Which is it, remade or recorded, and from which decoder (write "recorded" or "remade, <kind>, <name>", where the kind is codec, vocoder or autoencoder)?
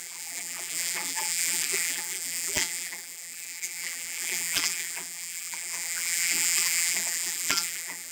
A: remade, vocoder, BigVGAN v2